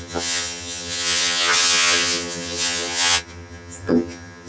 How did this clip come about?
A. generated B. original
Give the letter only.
A